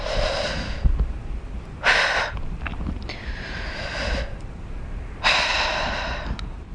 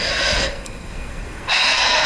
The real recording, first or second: first